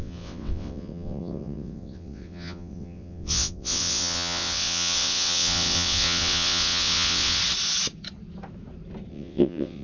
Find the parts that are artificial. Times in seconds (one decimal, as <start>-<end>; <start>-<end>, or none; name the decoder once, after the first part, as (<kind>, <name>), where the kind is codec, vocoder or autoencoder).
0.0-7.4 (vocoder, WaveNeXt); 9.1-9.8